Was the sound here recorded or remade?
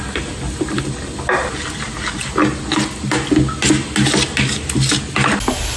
recorded